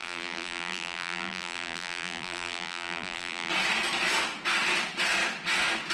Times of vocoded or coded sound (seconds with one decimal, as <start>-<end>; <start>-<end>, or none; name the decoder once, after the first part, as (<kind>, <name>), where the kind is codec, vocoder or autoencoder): 0.0-3.5 (vocoder, BigVGAN v2)